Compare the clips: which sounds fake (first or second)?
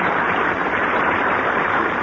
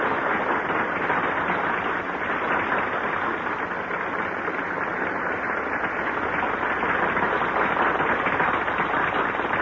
first